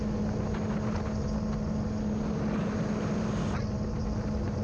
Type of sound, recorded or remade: recorded